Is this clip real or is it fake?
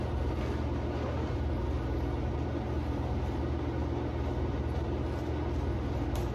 real